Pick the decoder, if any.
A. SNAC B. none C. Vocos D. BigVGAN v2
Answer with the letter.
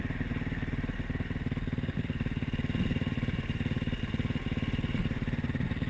B